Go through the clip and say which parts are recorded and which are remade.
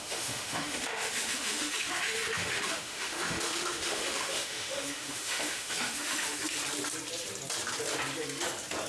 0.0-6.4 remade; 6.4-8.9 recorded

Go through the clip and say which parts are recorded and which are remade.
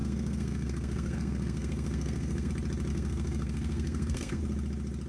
0.0-2.5 remade; 2.5-2.9 recorded; 2.9-4.4 remade; 4.4-5.1 recorded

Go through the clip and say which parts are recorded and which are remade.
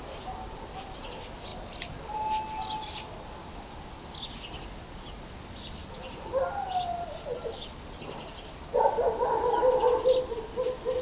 0.0-11.0 recorded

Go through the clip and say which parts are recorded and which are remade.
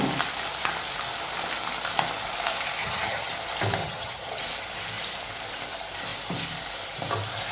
0.0-2.8 recorded; 2.8-3.3 remade; 3.3-3.8 recorded; 3.8-4.4 remade; 4.4-7.5 recorded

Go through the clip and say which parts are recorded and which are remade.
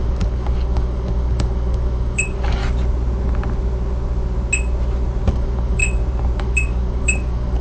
0.0-2.6 remade; 2.6-5.3 recorded; 5.3-5.8 remade; 5.8-6.4 recorded; 6.4-7.6 remade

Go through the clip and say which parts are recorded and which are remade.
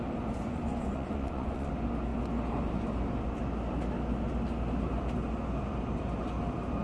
0.0-0.5 recorded; 0.5-1.7 remade; 1.7-6.8 recorded